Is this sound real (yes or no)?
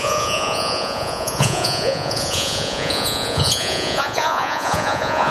no